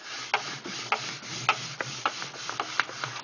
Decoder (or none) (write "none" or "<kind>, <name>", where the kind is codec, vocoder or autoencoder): none